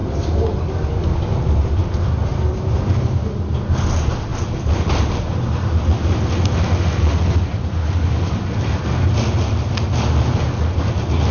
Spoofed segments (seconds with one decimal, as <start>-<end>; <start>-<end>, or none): 0.0-0.6; 4.3-5.3